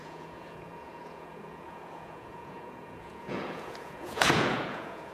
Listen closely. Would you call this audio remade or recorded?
remade